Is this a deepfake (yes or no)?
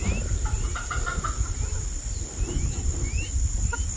no